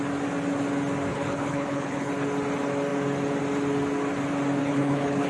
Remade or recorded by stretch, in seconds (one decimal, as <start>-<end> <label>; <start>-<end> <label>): 0.0-1.1 recorded; 1.1-2.1 remade; 2.1-4.6 recorded; 4.6-5.3 remade

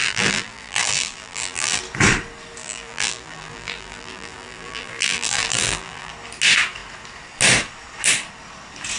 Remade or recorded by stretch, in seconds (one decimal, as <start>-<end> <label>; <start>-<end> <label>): 0.0-1.8 remade; 1.8-2.6 recorded; 2.6-6.1 remade; 6.1-9.0 recorded

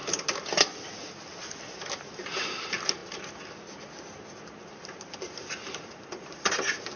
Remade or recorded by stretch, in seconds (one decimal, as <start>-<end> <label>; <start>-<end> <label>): 0.0-2.0 recorded; 2.0-3.0 remade; 3.0-4.8 recorded; 4.8-7.0 remade

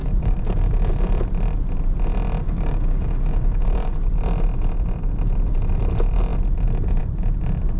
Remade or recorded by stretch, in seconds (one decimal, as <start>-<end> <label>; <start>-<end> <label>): 0.0-0.7 remade; 0.7-2.4 recorded; 2.4-4.1 remade; 4.1-7.8 recorded

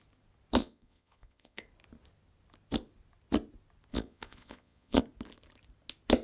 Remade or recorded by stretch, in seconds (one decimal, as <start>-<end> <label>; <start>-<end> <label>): 0.0-0.6 recorded; 0.6-1.6 remade; 1.6-3.9 recorded; 3.9-5.0 remade; 5.0-6.2 recorded